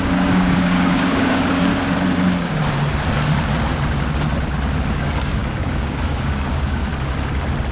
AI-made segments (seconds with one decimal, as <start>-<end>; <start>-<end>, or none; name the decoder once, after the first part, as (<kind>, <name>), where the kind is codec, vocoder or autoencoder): 0.0-1.7 (codec, DAC); 4.9-6.9